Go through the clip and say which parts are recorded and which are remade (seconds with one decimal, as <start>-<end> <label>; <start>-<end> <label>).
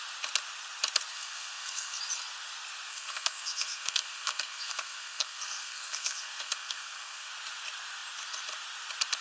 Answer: 0.0-1.1 recorded; 1.1-2.0 remade; 2.0-2.9 recorded; 2.9-7.3 remade; 7.3-9.2 recorded